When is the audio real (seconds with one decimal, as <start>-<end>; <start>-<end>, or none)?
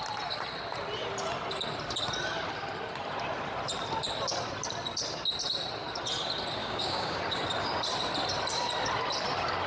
0.0-6.6; 7.2-9.7